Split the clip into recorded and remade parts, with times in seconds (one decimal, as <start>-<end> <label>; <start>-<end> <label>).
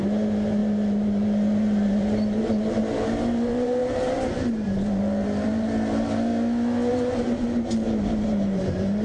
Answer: 0.0-6.3 remade; 6.3-6.9 recorded; 6.9-9.0 remade